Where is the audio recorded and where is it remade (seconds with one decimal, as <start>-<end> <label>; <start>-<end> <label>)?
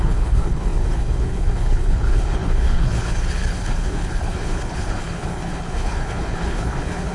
0.0-7.1 remade